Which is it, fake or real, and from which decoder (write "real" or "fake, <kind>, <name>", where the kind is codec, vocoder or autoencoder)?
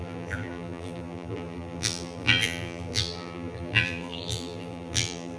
fake, vocoder, BigVGAN v2